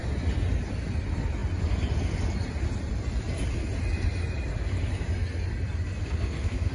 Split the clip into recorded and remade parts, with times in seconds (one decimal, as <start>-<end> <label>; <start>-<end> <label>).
0.0-6.0 recorded; 6.0-6.7 remade